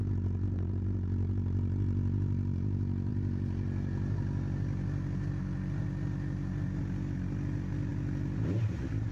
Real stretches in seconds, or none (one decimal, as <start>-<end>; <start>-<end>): 0.0-9.1